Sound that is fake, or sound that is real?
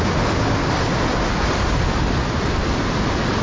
real